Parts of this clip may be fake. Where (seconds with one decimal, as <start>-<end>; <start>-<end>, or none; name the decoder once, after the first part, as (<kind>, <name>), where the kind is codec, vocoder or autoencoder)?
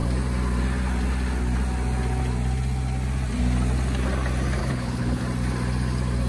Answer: 4.6-5.2 (codec, HILCodec)